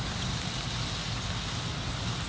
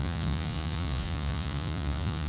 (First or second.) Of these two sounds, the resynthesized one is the second